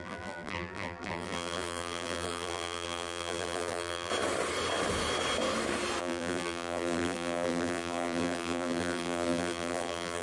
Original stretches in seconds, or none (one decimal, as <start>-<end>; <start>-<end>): 4.1-6.0